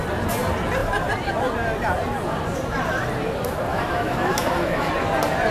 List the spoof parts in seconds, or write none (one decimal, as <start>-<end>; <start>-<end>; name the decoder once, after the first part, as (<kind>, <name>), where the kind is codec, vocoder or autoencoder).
3.7-4.9 (autoencoder, DAC-VAE)